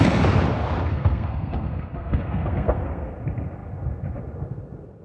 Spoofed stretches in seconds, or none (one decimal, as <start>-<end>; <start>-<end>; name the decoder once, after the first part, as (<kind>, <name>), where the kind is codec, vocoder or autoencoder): 0.9-3.1 (codec, SNAC)